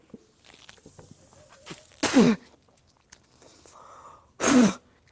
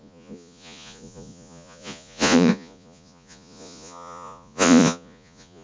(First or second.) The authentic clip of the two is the first